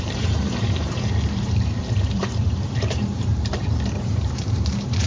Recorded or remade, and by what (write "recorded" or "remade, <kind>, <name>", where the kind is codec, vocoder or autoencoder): remade, vocoder, BigVGAN v2